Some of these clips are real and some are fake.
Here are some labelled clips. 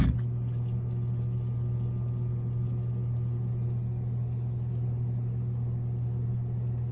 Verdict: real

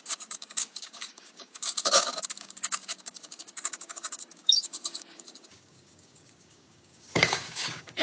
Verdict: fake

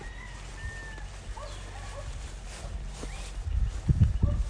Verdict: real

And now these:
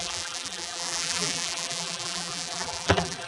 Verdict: fake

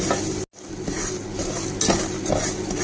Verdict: real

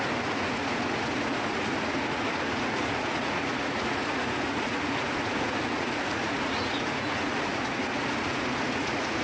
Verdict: fake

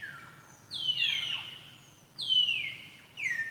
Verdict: real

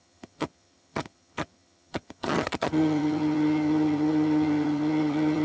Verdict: fake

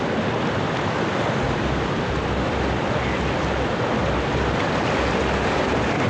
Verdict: real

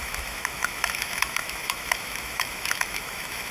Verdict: fake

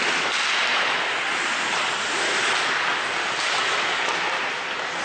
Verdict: real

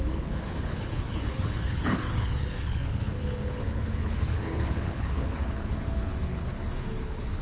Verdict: fake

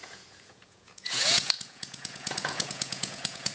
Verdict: fake